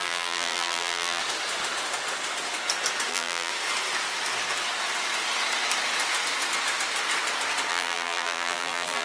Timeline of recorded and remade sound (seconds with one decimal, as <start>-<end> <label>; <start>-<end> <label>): 0.0-1.2 remade; 1.2-3.1 recorded; 3.1-3.5 remade; 3.5-7.7 recorded; 7.7-9.0 remade